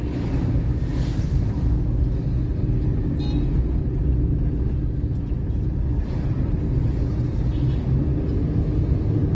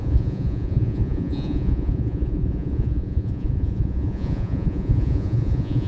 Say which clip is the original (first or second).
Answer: first